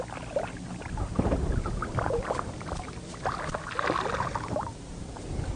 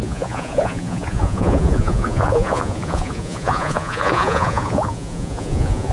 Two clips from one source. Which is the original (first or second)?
first